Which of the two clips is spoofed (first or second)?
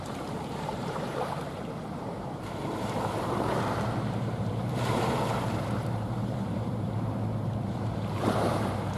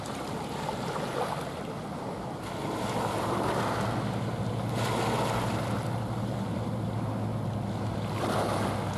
first